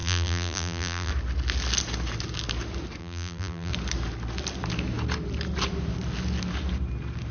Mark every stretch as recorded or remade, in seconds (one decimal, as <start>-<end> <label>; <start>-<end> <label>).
0.0-1.1 remade; 1.1-3.0 recorded; 3.0-3.7 remade; 3.7-7.3 recorded